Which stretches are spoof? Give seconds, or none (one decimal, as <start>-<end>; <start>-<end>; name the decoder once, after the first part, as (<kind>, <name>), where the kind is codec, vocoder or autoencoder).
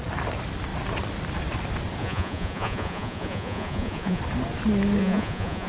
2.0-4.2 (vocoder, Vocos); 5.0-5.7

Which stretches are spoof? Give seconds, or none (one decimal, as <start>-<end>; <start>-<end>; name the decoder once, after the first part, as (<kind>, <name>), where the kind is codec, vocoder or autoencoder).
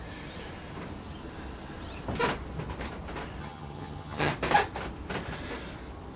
3.4-4.3 (vocoder, HiFi-GAN)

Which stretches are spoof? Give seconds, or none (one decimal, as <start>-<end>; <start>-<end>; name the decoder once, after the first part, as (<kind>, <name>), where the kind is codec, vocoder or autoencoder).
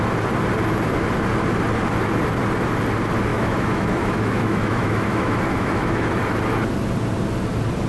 3.3-6.1 (autoencoder, DAC-VAE)